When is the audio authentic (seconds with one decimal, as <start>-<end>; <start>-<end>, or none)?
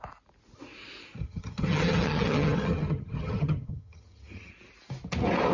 0.0-1.2; 4.5-5.5